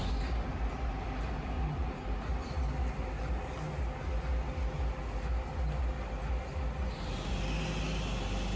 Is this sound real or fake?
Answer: real